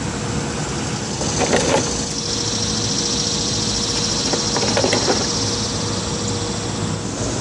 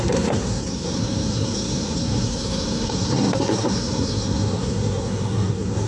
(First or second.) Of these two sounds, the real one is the first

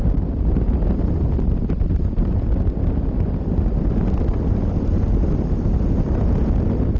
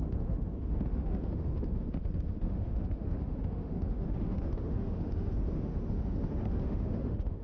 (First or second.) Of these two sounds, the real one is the first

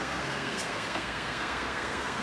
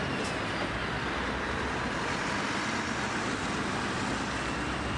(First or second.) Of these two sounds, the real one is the second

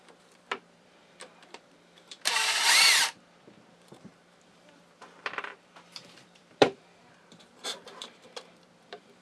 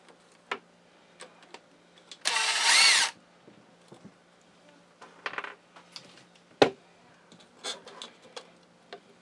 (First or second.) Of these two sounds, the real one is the second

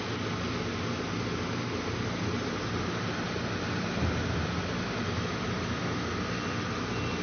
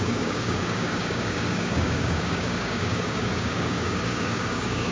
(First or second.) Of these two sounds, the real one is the first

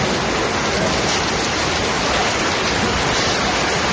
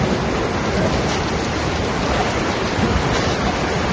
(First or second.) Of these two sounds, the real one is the first